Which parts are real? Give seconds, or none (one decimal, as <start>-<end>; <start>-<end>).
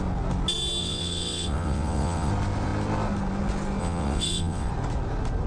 0.0-0.8; 2.3-3.8; 4.7-5.5